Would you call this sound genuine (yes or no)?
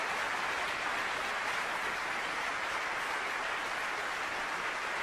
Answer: yes